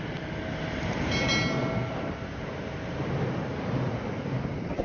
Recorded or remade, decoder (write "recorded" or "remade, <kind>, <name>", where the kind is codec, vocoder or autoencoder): recorded